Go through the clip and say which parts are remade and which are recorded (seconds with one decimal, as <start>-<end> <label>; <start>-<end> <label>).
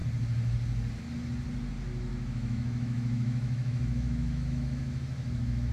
0.0-2.1 recorded; 2.1-5.7 remade